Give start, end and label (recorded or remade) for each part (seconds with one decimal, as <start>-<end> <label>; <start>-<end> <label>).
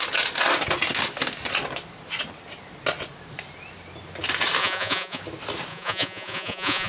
0.0-4.6 recorded; 4.6-5.2 remade; 5.2-5.7 recorded; 5.7-6.9 remade